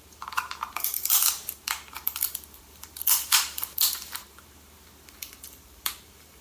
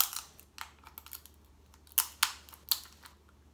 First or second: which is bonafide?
second